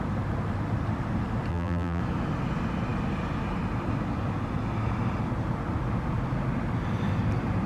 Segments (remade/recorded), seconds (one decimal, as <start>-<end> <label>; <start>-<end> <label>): 0.0-1.5 recorded; 1.5-2.0 remade; 2.0-7.7 recorded